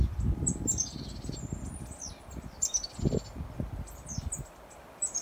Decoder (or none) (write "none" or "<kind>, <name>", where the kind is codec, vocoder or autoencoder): none